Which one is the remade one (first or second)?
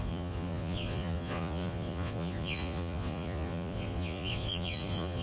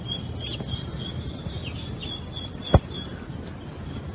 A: first